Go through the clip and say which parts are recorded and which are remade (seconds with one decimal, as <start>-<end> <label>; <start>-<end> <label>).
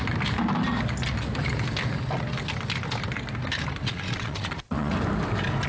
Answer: 0.0-3.8 recorded; 3.8-4.9 remade; 4.9-5.7 recorded